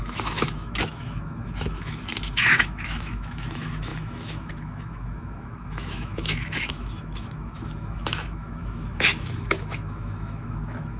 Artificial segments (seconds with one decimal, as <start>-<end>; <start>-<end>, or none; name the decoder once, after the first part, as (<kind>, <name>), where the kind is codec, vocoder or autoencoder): 0.0-11.0 (autoencoder, DAC-VAE)